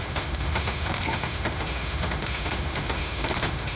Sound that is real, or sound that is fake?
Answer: fake